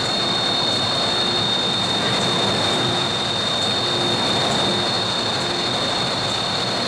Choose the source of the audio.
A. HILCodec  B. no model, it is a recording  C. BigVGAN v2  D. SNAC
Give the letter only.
B